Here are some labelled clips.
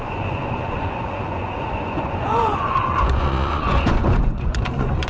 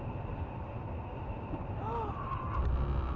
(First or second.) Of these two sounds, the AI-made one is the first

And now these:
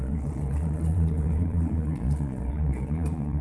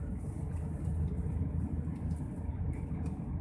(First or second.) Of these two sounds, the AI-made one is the first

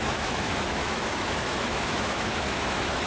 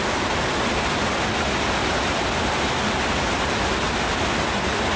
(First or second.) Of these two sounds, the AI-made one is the first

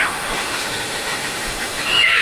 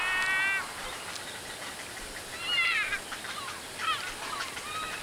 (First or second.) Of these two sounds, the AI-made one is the first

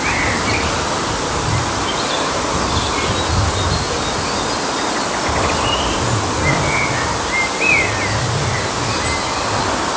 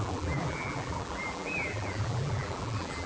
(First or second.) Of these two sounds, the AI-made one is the second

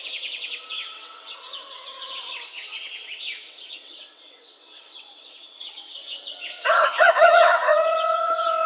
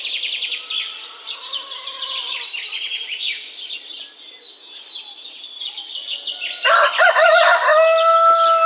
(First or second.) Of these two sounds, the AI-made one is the first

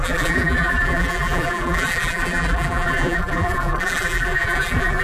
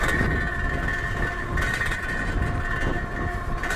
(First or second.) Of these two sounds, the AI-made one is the first